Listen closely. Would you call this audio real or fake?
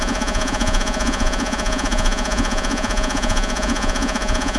fake